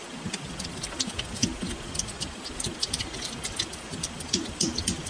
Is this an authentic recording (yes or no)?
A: yes